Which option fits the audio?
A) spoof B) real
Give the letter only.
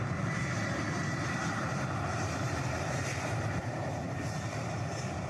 A